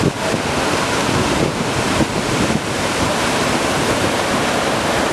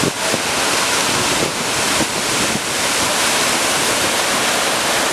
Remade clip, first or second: first